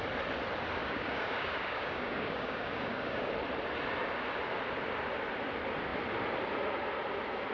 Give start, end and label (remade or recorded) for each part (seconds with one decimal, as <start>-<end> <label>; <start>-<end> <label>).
0.0-0.8 recorded; 0.8-3.3 remade; 3.3-7.5 recorded